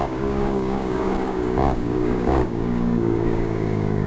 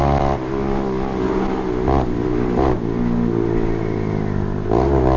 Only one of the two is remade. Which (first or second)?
first